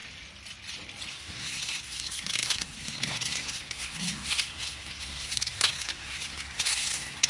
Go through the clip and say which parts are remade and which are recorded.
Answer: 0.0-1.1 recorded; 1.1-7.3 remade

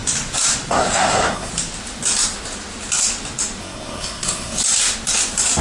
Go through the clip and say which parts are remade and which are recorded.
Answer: 0.0-0.7 recorded; 0.7-1.5 remade; 1.5-3.6 recorded; 3.6-4.6 remade; 4.6-5.6 recorded

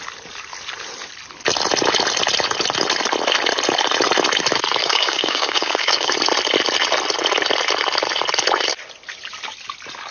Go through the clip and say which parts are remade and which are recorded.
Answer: 0.0-4.8 recorded; 4.8-6.1 remade; 6.1-10.1 recorded

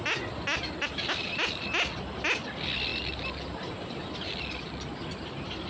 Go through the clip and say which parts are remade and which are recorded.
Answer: 0.0-5.7 recorded

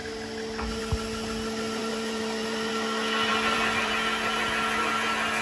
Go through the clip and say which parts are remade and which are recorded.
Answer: 0.0-1.8 recorded; 1.8-2.7 remade; 2.7-3.3 recorded; 3.3-3.9 remade; 3.9-5.4 recorded

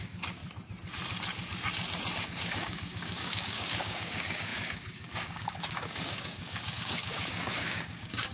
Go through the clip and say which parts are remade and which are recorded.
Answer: 0.0-0.4 remade; 0.4-2.2 recorded; 2.2-8.3 remade

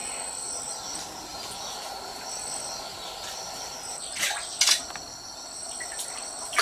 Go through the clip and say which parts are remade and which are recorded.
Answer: 0.0-6.6 recorded

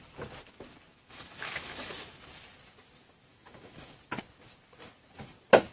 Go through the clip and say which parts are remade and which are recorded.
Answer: 0.0-0.9 recorded; 0.9-1.9 remade; 1.9-3.3 recorded; 3.3-3.9 remade; 3.9-5.7 recorded